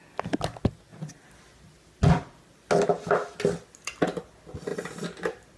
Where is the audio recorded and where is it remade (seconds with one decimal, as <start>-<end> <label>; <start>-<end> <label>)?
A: 0.0-5.6 recorded